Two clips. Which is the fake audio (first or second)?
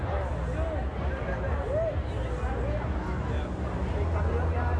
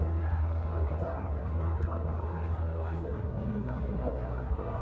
second